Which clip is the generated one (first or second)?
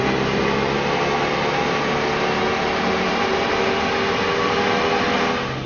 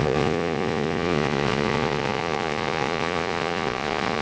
second